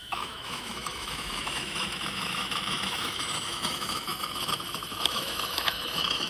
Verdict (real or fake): fake